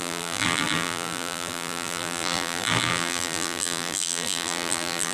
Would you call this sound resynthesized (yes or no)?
yes